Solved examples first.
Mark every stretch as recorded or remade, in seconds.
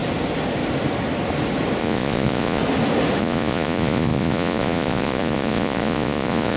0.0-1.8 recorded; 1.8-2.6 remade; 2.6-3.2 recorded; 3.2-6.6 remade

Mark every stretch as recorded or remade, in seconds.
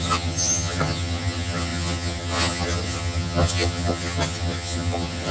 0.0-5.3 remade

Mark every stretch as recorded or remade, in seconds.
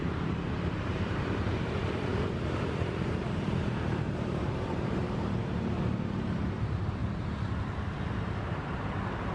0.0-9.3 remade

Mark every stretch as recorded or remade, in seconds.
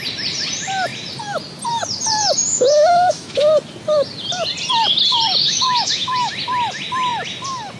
0.0-2.5 recorded; 2.5-3.4 remade; 3.4-5.4 recorded; 5.4-6.3 remade; 6.3-7.8 recorded